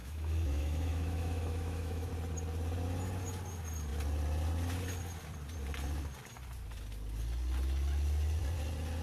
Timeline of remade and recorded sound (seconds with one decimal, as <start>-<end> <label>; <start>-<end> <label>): 0.0-2.1 remade; 2.1-9.0 recorded